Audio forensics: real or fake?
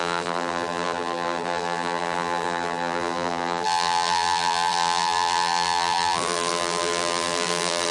fake